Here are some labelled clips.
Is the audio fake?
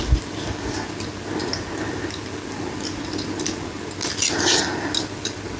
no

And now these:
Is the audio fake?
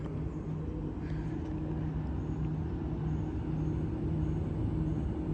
no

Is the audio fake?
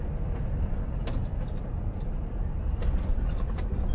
no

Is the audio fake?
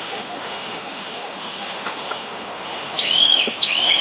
yes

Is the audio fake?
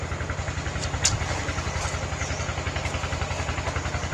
no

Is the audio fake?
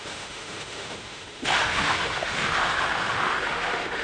yes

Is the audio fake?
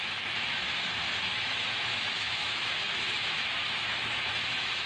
yes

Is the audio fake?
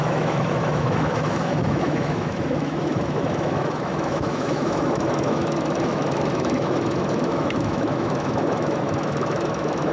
yes